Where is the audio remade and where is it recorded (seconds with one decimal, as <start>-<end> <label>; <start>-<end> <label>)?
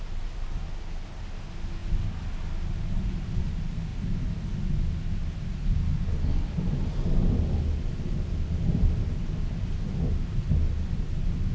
0.0-11.5 recorded